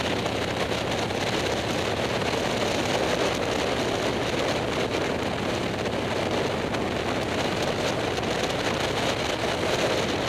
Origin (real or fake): real